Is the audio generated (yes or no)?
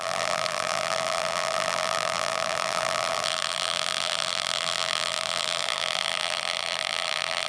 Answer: yes